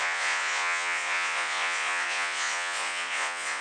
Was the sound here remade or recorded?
remade